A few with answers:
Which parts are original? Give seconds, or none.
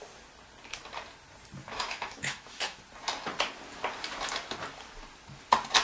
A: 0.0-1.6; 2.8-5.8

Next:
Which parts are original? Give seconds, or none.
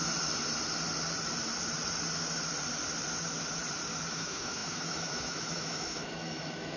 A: 0.0-4.1